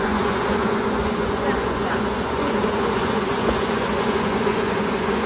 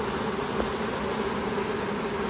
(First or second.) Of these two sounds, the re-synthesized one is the first